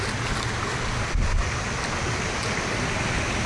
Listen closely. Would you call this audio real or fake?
real